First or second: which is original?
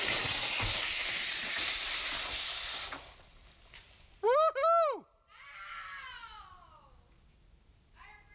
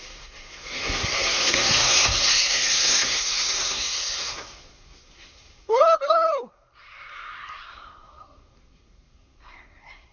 first